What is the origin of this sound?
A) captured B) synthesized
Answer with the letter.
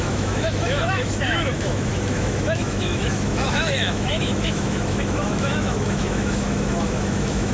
B